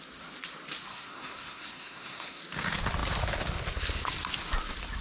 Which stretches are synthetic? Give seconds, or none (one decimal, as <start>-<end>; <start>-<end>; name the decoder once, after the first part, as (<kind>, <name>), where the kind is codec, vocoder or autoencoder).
0.9-2.4 (codec, SNAC)